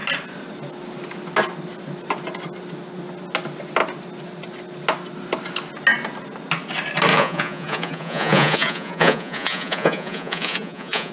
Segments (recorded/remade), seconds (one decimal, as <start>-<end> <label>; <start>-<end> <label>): 0.0-7.1 recorded; 7.1-11.1 remade